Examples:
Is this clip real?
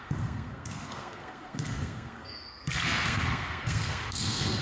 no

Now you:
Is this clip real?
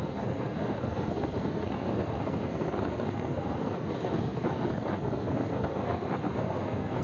no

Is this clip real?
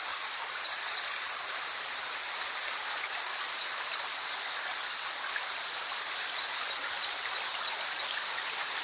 yes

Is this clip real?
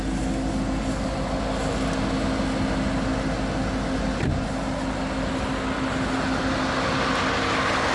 yes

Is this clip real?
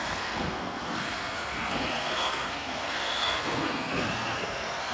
no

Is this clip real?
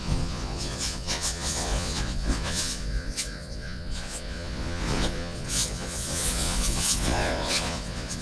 no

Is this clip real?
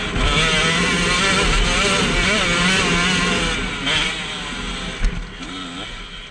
yes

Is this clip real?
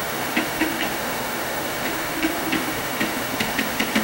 no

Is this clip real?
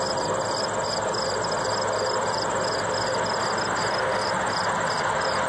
yes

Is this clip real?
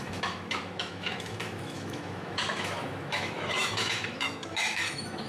no